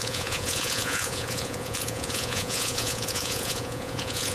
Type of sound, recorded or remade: remade